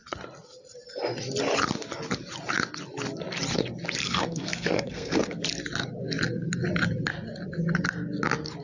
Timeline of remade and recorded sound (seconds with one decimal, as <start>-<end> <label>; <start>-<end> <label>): 0.0-4.0 recorded; 4.0-5.4 remade; 5.4-8.6 recorded